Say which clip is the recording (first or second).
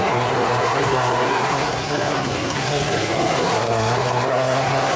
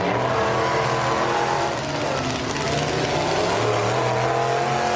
second